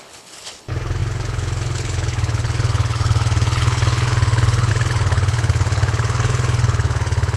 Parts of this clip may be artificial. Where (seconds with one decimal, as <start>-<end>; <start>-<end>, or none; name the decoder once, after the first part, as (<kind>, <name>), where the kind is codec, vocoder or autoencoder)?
0.0-7.4 (codec, HILCodec)